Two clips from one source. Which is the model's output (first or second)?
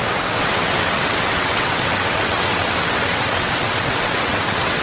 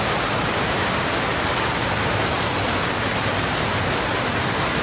first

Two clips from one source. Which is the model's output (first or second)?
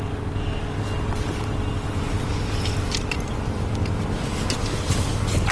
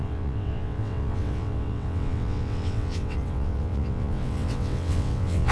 second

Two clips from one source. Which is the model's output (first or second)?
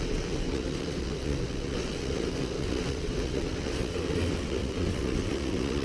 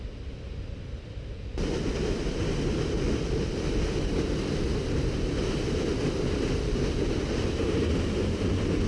first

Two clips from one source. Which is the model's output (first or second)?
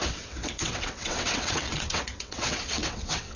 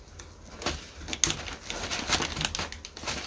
first